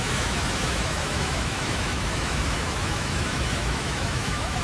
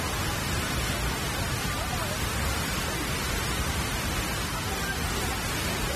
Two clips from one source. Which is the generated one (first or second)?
first